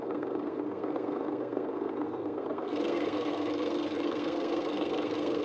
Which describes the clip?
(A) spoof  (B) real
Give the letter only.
A